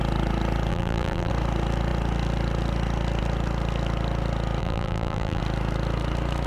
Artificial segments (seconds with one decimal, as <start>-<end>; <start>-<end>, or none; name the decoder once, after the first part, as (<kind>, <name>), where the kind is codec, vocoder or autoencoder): 0.7-1.3 (vocoder, BigVGAN v2); 4.6-5.4